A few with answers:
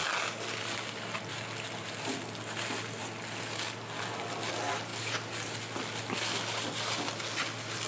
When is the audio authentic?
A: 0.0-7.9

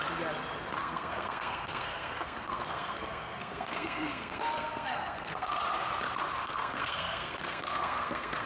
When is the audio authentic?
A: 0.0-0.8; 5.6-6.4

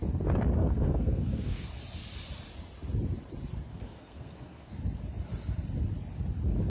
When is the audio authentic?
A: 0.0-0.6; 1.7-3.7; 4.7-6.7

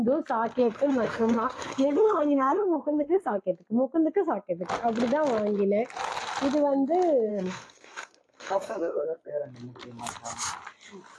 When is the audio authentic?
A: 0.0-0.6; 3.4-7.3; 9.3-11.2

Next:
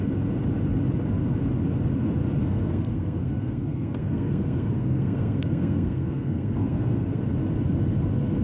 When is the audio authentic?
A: 0.0-2.4; 7.2-8.4

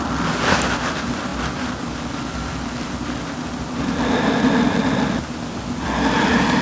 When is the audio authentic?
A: 0.0-6.6

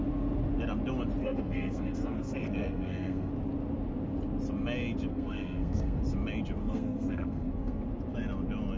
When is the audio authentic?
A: 0.0-1.2; 3.3-5.1; 6.0-6.6; 7.8-8.8